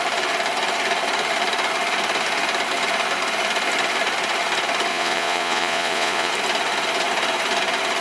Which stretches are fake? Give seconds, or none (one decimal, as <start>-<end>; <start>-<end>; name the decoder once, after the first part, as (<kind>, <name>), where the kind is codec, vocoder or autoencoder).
4.9-6.3 (vocoder, Vocos)